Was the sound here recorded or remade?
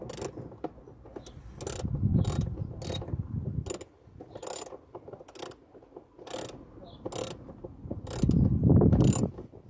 recorded